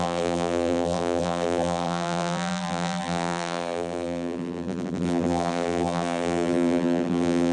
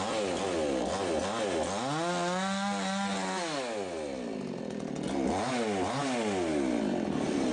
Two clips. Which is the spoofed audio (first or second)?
first